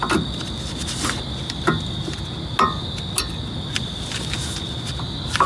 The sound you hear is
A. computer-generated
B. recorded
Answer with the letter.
B